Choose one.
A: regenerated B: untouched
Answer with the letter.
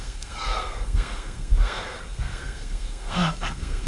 A